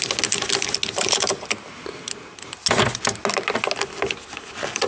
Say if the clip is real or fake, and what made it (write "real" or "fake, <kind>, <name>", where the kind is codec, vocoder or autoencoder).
real